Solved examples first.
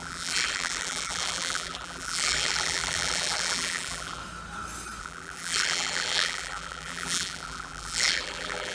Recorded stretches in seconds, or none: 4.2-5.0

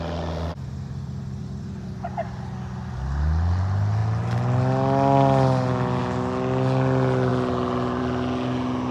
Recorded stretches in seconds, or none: 0.0-1.4; 2.3-8.9